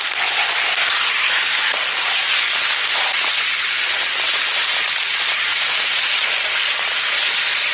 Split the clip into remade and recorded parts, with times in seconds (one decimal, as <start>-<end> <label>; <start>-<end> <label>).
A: 0.0-5.5 recorded; 5.5-6.3 remade; 6.3-7.7 recorded